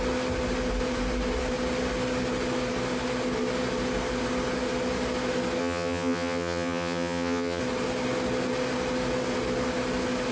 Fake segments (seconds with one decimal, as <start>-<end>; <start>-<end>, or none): 5.6-7.6